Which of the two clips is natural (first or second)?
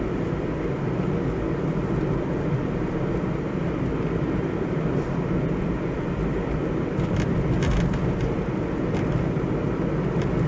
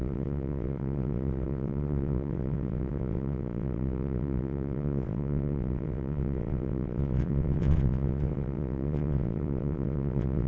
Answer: first